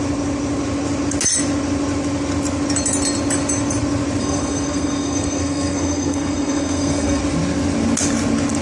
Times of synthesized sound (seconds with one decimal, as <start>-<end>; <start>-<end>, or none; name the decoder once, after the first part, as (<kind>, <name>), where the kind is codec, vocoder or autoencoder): 4.2-7.2 (codec, SNAC)